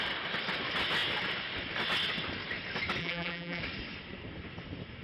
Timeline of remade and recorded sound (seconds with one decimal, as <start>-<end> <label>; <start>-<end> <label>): 0.0-3.0 recorded; 3.0-3.6 remade; 3.6-5.0 recorded